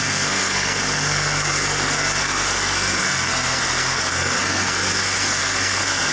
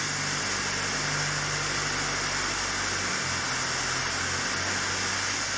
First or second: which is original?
second